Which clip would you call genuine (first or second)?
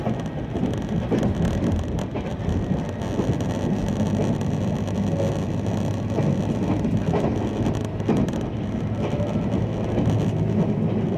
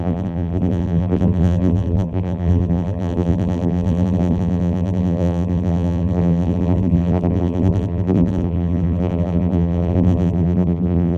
first